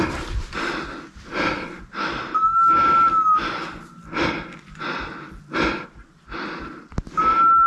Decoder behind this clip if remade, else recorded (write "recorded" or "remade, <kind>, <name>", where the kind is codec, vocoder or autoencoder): recorded